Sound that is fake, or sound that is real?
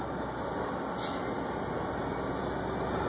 real